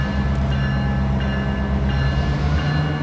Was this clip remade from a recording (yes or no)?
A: no